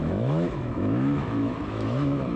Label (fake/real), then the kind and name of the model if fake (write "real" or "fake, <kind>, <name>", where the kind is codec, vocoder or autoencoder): fake, autoencoder, DAC-VAE